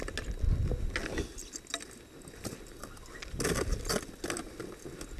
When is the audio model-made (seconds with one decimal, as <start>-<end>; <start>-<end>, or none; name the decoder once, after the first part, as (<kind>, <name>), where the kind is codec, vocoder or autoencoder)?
none